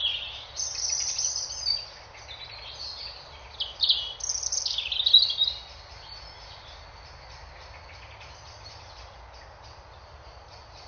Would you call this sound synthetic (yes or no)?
no